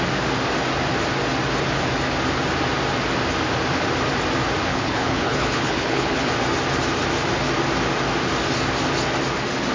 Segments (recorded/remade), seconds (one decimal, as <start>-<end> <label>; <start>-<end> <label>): 0.0-4.7 recorded; 4.7-6.3 remade; 6.3-9.7 recorded